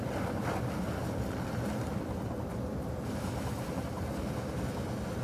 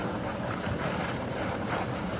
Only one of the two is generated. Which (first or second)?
second